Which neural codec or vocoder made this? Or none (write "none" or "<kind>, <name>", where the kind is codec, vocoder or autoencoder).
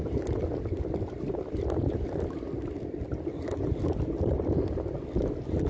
none